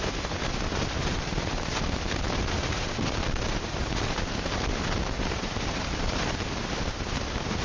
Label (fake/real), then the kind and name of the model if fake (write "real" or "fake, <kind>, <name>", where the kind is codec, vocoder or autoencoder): fake, vocoder, BigVGAN v2